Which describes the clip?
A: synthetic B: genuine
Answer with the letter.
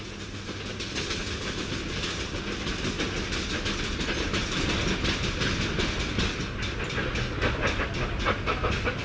B